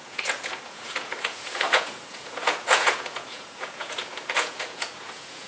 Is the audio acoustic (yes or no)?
no